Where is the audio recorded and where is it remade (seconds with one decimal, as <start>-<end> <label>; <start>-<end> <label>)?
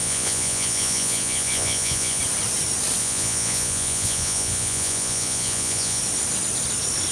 0.0-2.2 remade; 2.2-3.0 recorded; 3.0-6.0 remade; 6.0-7.1 recorded